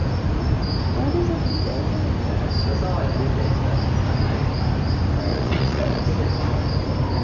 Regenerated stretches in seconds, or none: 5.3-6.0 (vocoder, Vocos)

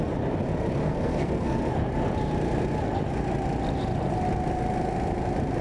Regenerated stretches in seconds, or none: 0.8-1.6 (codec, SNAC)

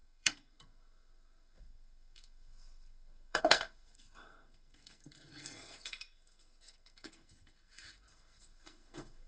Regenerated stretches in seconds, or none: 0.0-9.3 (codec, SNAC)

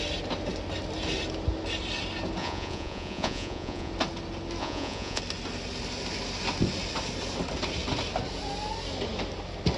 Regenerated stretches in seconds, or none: 2.4-3.9 (vocoder, Vocos); 4.6-5.2

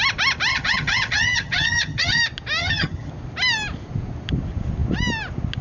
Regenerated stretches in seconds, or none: 0.5-2.2 (vocoder, HiFi-GAN); 2.6-3.1

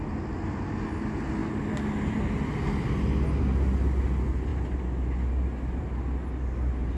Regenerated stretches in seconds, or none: none

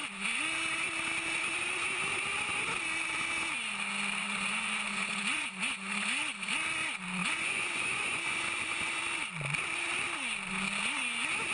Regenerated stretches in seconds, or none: 4.2-6.5 (vocoder, Vocos); 7.2-9.0